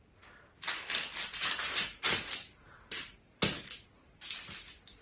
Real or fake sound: real